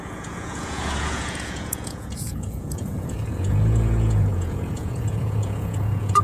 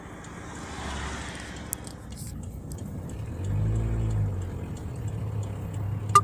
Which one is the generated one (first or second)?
first